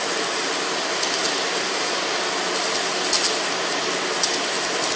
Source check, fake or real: real